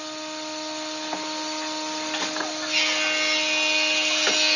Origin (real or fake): real